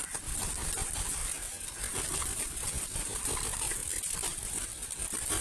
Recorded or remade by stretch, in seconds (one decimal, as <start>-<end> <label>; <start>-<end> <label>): 0.0-5.4 recorded